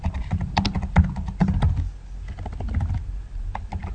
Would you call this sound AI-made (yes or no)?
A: no